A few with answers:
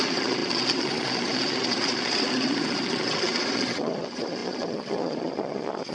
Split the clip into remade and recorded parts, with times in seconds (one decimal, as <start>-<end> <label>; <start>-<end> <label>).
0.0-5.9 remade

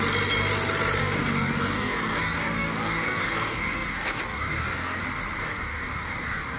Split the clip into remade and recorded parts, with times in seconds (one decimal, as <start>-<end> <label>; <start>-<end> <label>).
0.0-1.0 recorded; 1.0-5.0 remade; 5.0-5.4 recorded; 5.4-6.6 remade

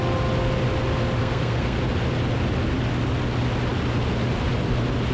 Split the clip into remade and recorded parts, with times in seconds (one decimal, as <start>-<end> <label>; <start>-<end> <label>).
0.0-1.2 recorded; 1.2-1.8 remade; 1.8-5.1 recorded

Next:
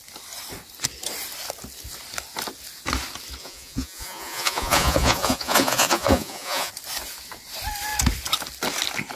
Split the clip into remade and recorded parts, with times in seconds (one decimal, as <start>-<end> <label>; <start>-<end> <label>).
0.0-3.4 recorded; 3.4-6.7 remade; 6.7-9.2 recorded